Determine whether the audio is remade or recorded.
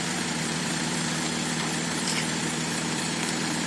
remade